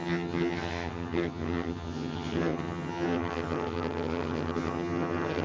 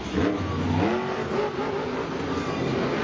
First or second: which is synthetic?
first